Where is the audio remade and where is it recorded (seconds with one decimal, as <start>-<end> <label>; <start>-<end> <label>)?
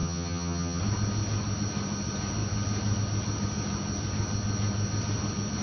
0.0-0.8 remade; 0.8-5.6 recorded